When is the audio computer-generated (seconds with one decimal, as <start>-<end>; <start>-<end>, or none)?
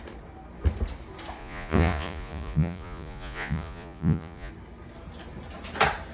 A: 1.4-4.5